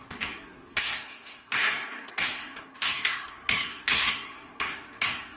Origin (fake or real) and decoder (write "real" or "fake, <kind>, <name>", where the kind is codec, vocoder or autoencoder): fake, codec, SNAC